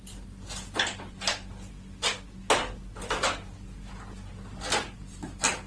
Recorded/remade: recorded